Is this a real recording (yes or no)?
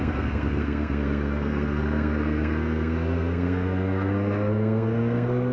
no